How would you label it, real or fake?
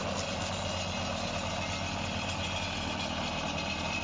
real